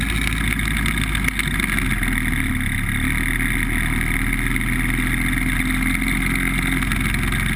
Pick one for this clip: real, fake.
real